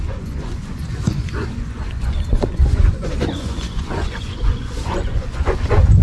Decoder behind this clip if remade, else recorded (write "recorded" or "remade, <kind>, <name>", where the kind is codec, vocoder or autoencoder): remade, vocoder, Vocos